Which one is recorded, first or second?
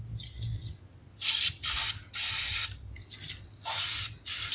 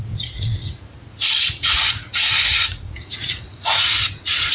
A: first